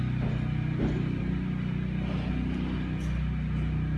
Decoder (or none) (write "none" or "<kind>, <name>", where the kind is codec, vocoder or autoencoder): none